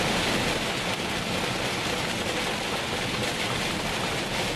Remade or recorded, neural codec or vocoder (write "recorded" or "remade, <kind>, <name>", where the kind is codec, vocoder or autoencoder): recorded